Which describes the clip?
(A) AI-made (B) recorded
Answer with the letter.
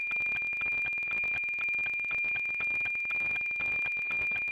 B